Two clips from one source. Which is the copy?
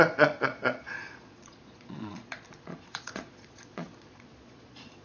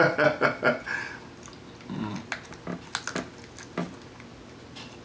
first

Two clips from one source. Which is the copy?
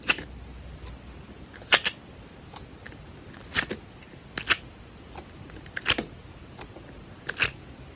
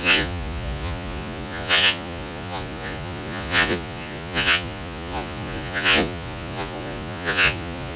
second